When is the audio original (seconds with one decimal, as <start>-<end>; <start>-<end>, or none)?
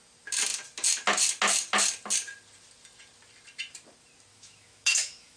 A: 0.0-4.3